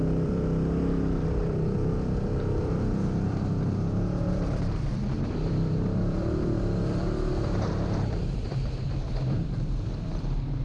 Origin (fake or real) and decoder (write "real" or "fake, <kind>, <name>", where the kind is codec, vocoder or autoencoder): fake, vocoder, BigVGAN v2